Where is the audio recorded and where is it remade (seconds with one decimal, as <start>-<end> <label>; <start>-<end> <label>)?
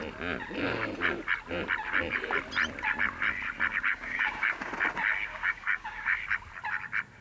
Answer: 0.0-3.7 recorded; 3.7-4.7 remade; 4.7-5.3 recorded; 5.3-6.2 remade; 6.2-7.2 recorded